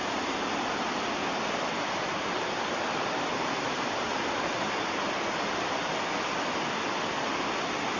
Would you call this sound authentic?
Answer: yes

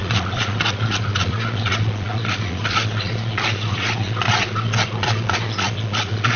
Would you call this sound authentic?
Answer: no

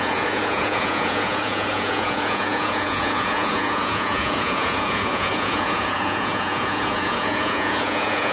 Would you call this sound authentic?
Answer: no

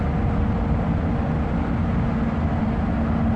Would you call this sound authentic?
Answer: yes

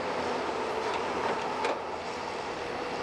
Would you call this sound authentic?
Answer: yes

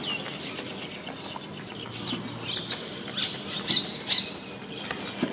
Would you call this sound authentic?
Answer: yes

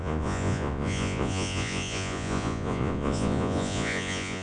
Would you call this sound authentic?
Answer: no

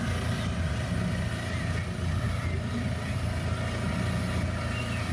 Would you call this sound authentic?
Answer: yes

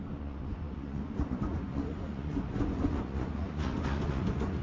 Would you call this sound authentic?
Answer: no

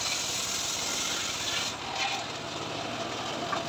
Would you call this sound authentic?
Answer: yes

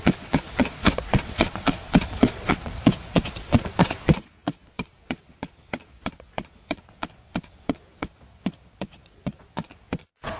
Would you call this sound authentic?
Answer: no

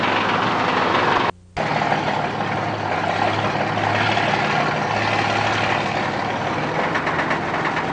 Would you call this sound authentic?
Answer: yes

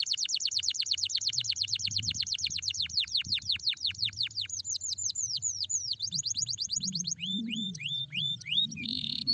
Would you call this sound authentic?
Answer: no